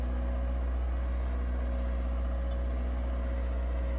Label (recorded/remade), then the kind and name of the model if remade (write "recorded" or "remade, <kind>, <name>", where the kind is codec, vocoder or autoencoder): recorded